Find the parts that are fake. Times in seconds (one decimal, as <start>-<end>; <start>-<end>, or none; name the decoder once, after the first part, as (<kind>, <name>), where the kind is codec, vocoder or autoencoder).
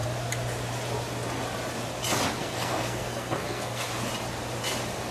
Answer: 2.4-3.9 (codec, SNAC)